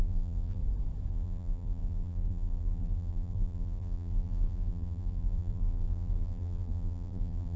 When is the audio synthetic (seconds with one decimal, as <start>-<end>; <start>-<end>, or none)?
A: 0.0-0.6; 1.1-7.6